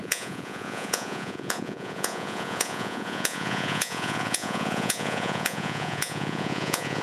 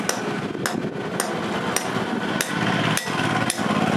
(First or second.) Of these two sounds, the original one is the second